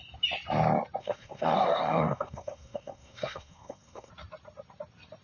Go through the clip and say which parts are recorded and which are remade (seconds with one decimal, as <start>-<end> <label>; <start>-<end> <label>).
0.0-1.0 recorded; 1.0-4.1 remade; 4.1-5.2 recorded